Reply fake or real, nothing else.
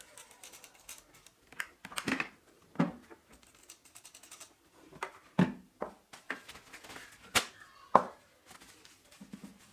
real